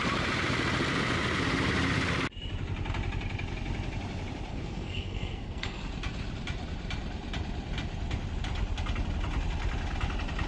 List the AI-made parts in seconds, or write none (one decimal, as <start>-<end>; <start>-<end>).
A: 4.5-5.8